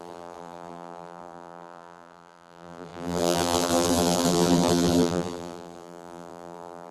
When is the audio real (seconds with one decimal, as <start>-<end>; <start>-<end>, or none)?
none